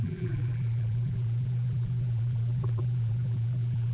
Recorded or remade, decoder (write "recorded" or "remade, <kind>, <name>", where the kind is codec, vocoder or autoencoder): remade, vocoder, BigVGAN v2